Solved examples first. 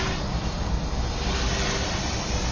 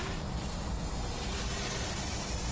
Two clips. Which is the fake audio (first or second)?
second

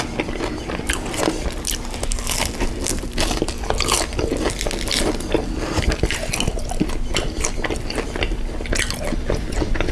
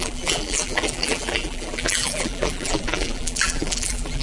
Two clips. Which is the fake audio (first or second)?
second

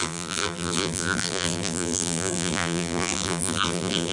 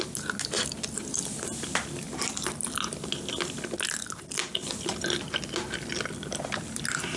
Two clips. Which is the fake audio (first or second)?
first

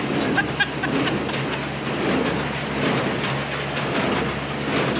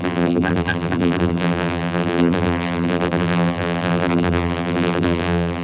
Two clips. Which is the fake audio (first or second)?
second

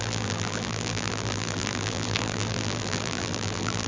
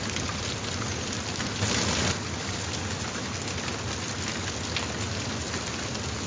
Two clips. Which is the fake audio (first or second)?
first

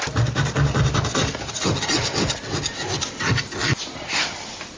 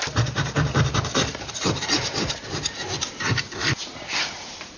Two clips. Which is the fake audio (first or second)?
second